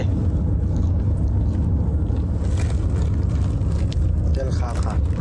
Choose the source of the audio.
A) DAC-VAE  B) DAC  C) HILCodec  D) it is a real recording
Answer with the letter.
D